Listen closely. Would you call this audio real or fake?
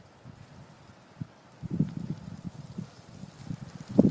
real